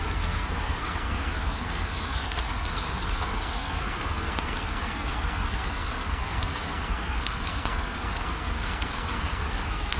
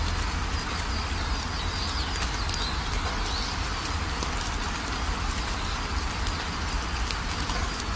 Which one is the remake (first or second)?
first